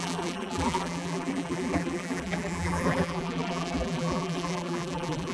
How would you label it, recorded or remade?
remade